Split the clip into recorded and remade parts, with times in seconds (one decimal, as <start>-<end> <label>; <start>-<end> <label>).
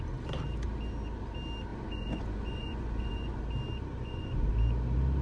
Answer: 0.0-1.7 recorded; 1.7-3.4 remade; 3.4-3.9 recorded; 3.9-4.5 remade; 4.5-5.2 recorded